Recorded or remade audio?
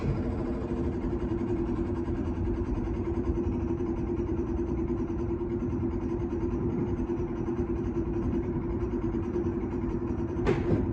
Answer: remade